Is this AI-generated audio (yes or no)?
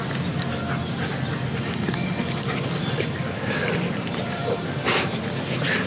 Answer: no